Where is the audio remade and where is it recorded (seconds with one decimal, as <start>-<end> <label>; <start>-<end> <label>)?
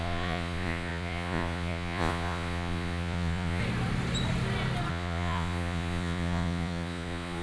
0.0-3.6 remade; 3.6-4.9 recorded; 4.9-7.4 remade